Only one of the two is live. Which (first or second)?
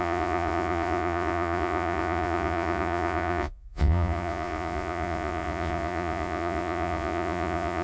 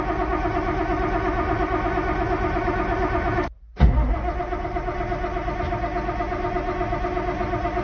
second